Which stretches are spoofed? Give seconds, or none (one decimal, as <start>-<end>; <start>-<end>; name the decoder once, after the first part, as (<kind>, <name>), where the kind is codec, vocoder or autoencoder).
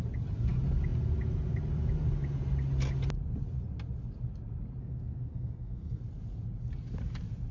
4.8-6.0 (codec, SNAC)